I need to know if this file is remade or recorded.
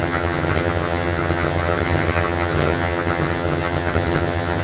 remade